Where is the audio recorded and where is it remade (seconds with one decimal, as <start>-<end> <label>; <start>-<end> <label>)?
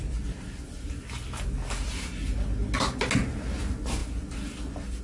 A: 0.0-5.0 recorded